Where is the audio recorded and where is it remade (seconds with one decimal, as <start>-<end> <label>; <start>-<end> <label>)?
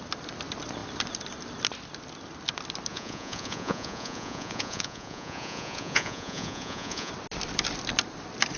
0.0-2.9 recorded; 2.9-7.1 remade; 7.1-8.6 recorded